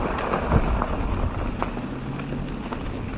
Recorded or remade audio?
recorded